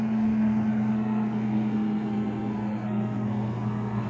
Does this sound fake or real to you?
fake